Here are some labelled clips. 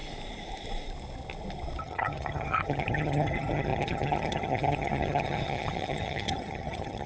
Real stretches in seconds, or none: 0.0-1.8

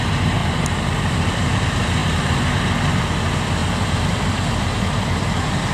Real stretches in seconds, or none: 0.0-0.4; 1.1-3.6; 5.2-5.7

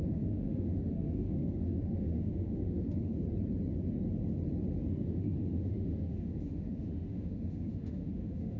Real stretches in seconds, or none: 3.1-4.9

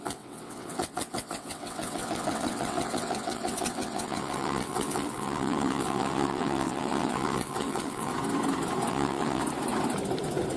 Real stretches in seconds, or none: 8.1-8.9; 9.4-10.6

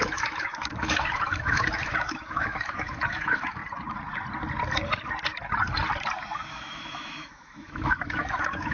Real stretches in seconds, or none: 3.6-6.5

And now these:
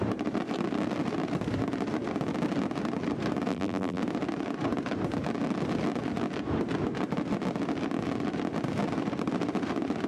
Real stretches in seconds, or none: 0.0-3.5; 4.0-10.1